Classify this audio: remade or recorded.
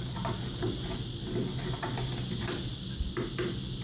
recorded